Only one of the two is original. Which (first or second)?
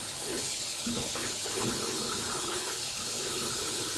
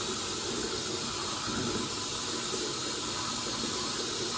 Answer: second